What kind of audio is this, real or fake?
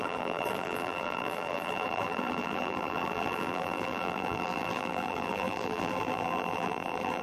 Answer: fake